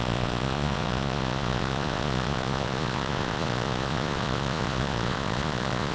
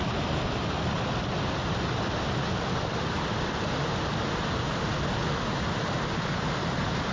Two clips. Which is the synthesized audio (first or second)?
first